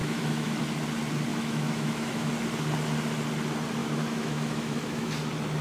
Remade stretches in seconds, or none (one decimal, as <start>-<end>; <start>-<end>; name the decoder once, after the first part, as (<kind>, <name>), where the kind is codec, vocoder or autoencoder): 0.0-0.6 (autoencoder, DAC-VAE); 1.3-2.3; 3.8-5.1